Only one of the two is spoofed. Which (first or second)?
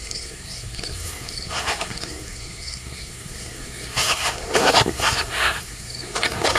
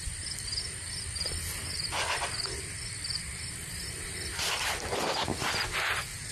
first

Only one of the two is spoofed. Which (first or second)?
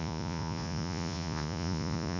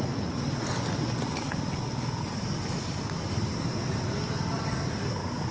first